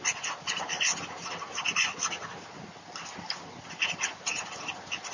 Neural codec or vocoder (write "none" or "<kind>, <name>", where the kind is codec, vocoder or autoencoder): none